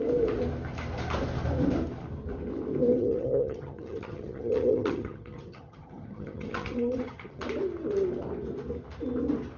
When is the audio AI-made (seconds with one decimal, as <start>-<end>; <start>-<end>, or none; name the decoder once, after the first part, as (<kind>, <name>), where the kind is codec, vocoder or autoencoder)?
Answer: 2.9-7.4 (vocoder, HiFi-GAN)